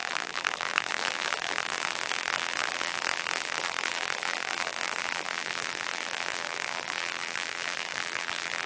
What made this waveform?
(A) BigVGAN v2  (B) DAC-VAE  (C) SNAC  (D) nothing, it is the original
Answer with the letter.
A